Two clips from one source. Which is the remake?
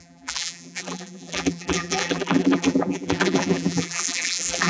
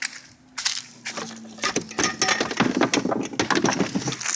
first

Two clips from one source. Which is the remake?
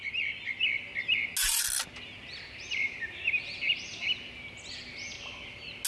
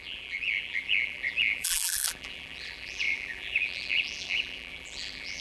second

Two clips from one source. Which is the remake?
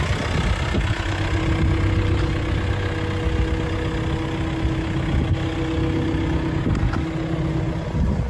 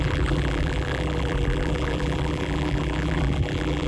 second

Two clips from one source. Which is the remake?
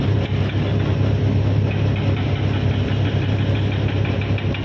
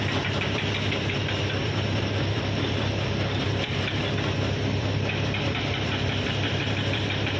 second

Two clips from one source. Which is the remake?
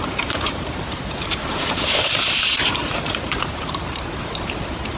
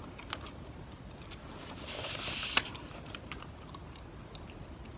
first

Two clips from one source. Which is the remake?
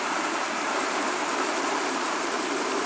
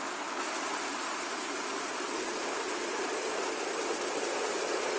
first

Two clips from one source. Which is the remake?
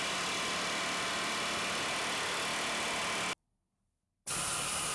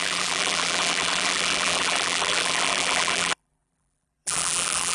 second